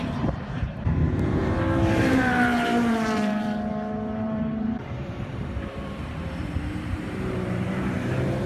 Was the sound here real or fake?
fake